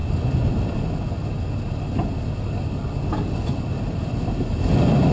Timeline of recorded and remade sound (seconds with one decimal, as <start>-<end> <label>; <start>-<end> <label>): 0.0-5.1 recorded